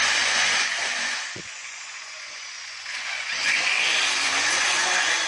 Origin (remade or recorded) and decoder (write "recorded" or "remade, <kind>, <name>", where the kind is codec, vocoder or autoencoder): remade, vocoder, Vocos